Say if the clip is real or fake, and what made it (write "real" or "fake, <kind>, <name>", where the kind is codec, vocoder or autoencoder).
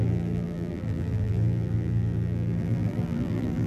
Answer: fake, vocoder, BigVGAN v2